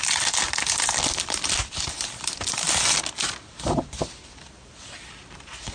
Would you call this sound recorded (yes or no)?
yes